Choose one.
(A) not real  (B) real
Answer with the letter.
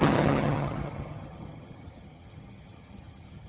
A